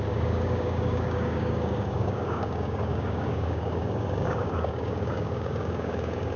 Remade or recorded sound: remade